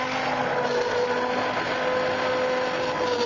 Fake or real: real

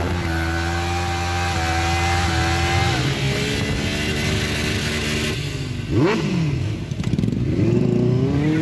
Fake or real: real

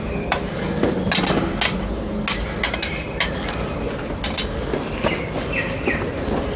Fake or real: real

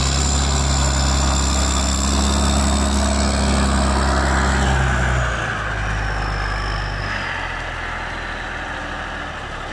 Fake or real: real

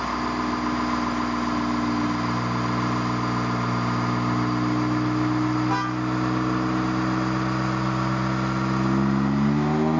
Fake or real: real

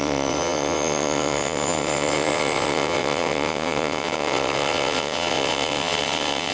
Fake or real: fake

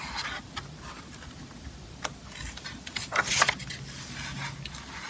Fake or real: real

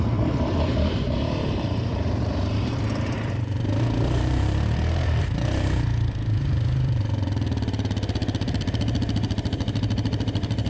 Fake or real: fake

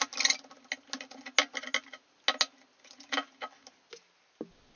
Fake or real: real